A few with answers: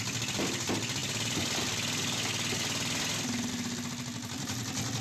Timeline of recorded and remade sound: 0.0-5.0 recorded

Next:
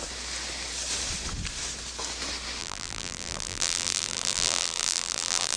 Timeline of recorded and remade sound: 0.0-2.6 recorded; 2.6-5.6 remade

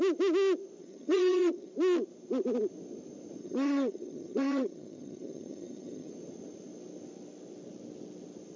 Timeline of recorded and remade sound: 0.0-0.8 recorded; 0.8-1.7 remade; 1.7-3.4 recorded; 3.4-6.1 remade; 6.1-8.6 recorded

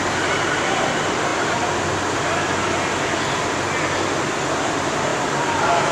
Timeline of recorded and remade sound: 0.0-5.9 recorded

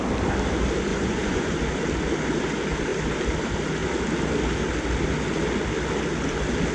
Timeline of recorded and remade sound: 0.0-0.9 recorded; 0.9-1.6 remade; 1.6-6.7 recorded